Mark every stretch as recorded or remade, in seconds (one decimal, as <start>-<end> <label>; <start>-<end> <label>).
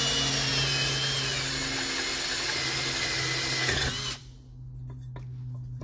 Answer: 0.0-5.8 recorded